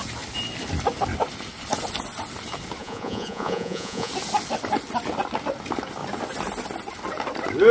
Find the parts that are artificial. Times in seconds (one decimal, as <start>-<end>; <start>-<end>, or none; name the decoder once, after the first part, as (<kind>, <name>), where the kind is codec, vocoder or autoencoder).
2.8-4.1 (vocoder, Vocos)